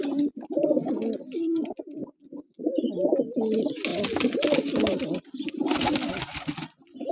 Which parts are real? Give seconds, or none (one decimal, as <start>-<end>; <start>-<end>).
0.0-2.0; 2.9-7.1